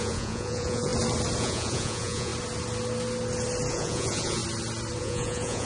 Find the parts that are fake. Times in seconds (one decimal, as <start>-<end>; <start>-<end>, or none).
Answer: 0.0-0.9; 1.4-2.3; 3.7-4.4; 5.0-5.7